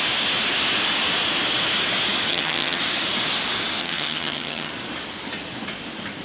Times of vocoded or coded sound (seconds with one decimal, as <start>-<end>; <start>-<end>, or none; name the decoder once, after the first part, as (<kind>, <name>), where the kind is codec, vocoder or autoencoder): 2.3-2.8 (vocoder, HiFi-GAN); 3.8-4.7